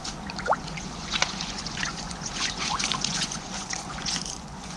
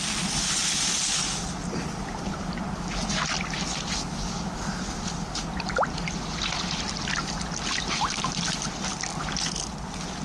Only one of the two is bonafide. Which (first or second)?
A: second